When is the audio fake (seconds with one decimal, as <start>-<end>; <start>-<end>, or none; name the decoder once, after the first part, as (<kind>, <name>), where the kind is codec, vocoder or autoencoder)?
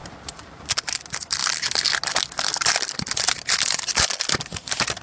0.0-0.7 (vocoder, BigVGAN v2)